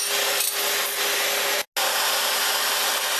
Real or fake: real